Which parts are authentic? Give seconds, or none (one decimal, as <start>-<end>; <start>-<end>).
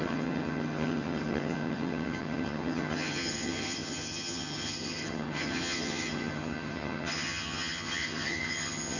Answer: none